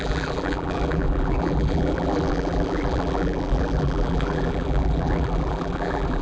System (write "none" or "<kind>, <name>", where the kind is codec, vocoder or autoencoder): vocoder, BigVGAN v2